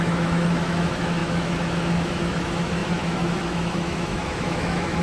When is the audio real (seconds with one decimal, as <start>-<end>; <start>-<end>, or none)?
none